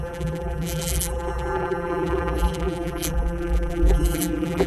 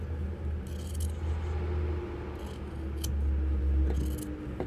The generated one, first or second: first